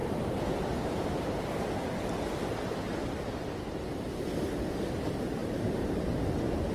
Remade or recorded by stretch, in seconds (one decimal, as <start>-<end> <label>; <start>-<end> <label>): 0.0-4.0 remade; 4.0-5.4 recorded; 5.4-6.0 remade; 6.0-6.7 recorded